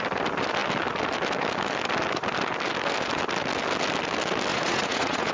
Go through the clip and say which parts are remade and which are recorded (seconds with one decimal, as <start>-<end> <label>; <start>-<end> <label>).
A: 0.0-4.5 recorded; 4.5-5.3 remade